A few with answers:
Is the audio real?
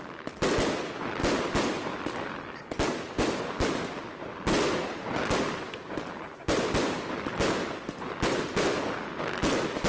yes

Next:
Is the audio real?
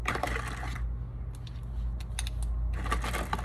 yes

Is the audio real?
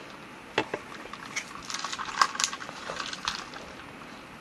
yes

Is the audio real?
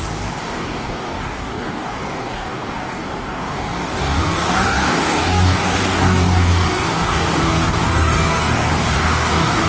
no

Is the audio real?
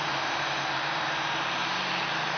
no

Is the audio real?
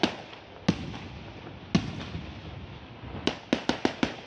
yes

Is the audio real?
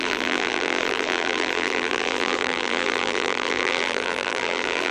no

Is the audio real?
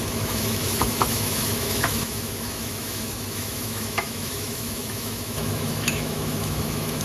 no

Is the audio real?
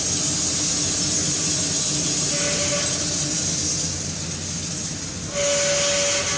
yes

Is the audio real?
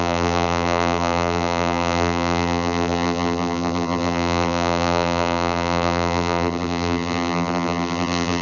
no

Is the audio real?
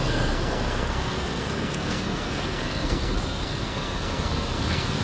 no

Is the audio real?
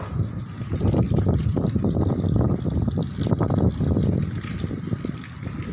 yes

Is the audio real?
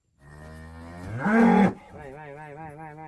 yes